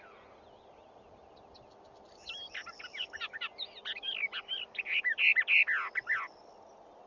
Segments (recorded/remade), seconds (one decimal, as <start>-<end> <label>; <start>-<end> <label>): 0.0-7.1 recorded